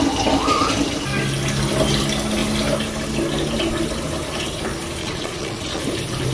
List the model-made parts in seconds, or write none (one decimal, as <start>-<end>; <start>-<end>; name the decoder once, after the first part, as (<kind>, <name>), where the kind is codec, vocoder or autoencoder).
5.0-5.8 (vocoder, Vocos)